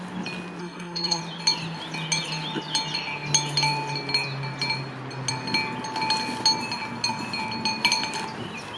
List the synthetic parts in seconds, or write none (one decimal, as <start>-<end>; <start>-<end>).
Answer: 0.6-1.2